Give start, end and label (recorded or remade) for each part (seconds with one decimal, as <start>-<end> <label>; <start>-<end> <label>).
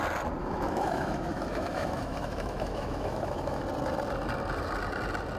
0.0-0.4 recorded; 0.4-3.6 remade; 3.6-5.4 recorded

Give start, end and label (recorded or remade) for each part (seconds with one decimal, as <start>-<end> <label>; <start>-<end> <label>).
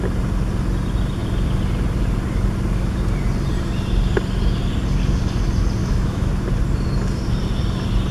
0.0-5.8 recorded; 5.8-6.3 remade; 6.3-8.1 recorded